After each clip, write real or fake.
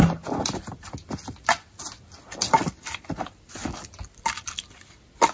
real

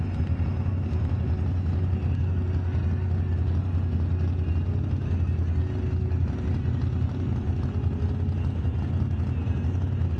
real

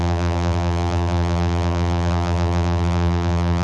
fake